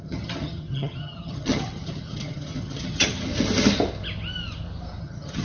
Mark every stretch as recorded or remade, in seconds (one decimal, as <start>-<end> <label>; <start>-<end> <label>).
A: 0.0-3.3 remade; 3.3-5.0 recorded; 5.0-5.4 remade